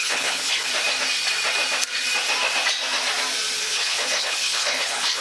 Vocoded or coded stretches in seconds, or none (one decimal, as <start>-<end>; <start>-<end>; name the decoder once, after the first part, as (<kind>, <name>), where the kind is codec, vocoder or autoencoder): 0.0-0.7 (codec, HILCodec); 3.6-5.2